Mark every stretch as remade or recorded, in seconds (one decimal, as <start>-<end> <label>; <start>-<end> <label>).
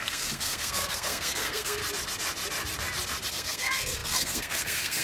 0.0-1.8 remade; 1.8-3.3 recorded; 3.3-5.0 remade